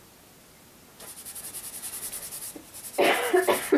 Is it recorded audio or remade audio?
recorded